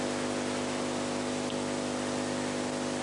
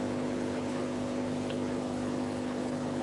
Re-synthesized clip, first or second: second